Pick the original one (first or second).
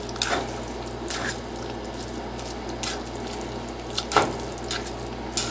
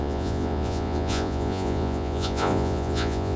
first